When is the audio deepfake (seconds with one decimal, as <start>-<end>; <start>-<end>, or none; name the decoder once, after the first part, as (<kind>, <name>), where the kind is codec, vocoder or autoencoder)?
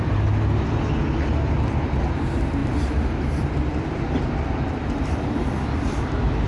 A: 2.6-4.9 (vocoder, BigVGAN v2)